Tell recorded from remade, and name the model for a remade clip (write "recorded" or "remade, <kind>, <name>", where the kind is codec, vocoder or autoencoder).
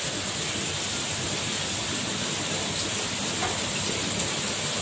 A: recorded